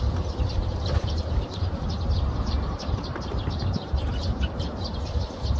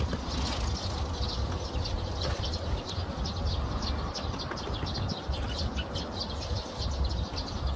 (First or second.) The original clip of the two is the second